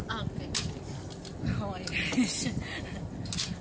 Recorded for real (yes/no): yes